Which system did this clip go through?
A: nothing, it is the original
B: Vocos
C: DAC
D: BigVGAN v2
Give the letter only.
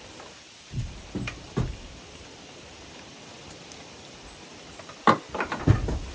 D